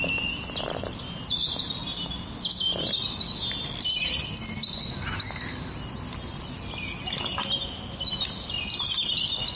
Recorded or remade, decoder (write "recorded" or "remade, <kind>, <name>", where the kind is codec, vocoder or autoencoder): recorded